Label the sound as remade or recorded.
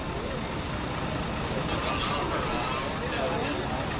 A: recorded